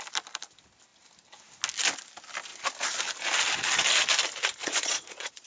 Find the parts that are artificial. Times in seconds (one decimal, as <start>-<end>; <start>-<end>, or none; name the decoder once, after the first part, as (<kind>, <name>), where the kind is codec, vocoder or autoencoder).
4.6-5.5 (vocoder, Vocos)